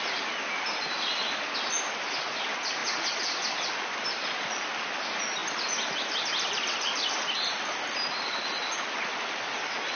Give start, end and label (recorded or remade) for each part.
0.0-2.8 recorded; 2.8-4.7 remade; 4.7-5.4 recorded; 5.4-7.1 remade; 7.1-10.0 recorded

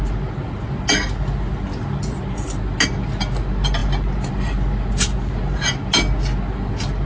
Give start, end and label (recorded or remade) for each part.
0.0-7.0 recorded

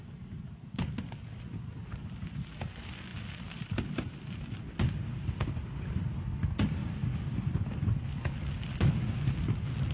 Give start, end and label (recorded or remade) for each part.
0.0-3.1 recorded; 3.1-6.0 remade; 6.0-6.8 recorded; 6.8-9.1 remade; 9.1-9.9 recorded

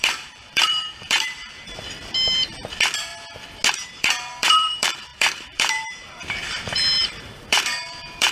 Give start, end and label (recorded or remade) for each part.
0.0-3.1 remade; 3.1-3.7 recorded; 3.7-8.3 remade

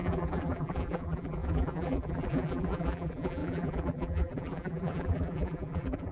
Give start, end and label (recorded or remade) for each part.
0.0-6.1 remade

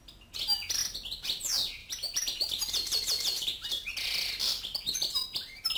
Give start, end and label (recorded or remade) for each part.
0.0-1.8 recorded; 1.8-2.5 remade; 2.5-3.3 recorded; 3.3-3.9 remade; 3.9-5.8 recorded

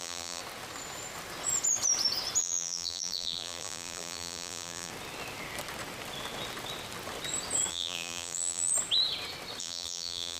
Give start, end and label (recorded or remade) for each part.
0.0-0.4 remade; 0.4-2.4 recorded; 2.4-4.9 remade; 4.9-7.7 recorded; 7.7-8.7 remade; 8.7-9.6 recorded; 9.6-10.4 remade